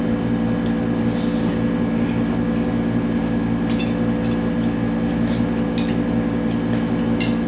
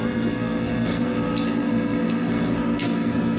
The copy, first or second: second